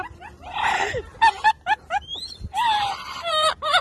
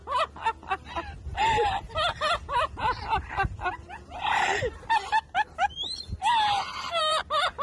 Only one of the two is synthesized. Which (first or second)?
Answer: first